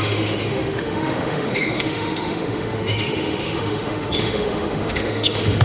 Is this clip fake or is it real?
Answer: fake